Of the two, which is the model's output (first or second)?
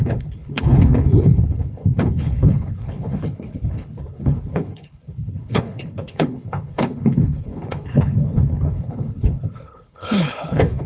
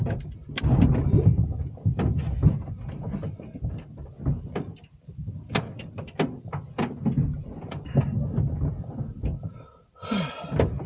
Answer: first